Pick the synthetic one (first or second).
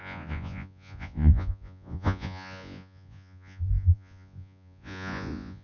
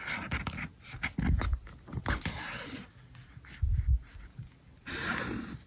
first